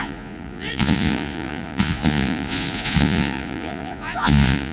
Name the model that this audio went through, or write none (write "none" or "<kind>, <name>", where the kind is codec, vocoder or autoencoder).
vocoder, Vocos